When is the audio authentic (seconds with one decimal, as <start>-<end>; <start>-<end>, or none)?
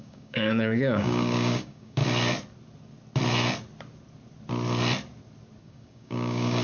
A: 2.0-5.6